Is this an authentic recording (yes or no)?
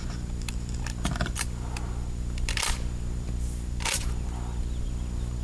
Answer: yes